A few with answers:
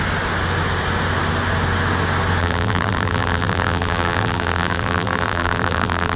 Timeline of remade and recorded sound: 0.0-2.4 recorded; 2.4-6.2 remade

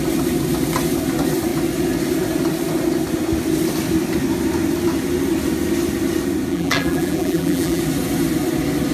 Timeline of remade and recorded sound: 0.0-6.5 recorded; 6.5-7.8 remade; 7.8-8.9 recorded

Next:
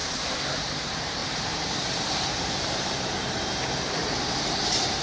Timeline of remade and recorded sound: 0.0-0.6 recorded; 0.6-4.0 remade; 4.0-5.0 recorded

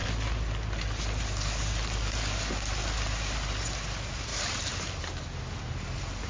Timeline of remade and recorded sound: 0.0-4.3 recorded; 4.3-5.2 remade; 5.2-6.3 recorded

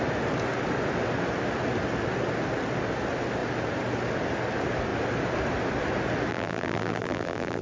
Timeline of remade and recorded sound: 0.0-6.3 recorded; 6.3-7.6 remade